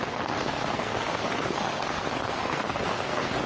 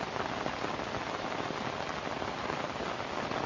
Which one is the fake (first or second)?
first